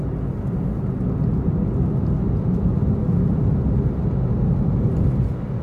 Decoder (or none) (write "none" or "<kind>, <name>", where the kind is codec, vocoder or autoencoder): none